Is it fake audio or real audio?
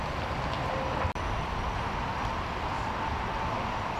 real